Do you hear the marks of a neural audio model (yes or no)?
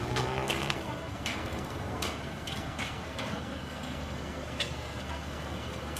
yes